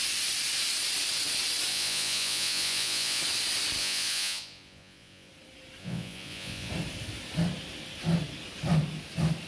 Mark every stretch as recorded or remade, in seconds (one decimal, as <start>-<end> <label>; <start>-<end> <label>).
0.0-1.7 recorded; 1.7-3.2 remade; 3.2-3.8 recorded; 3.8-5.3 remade; 5.3-5.8 recorded; 5.8-6.7 remade; 6.7-9.5 recorded